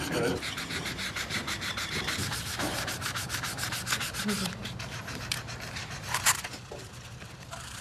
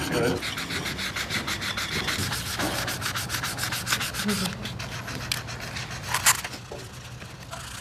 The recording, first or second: second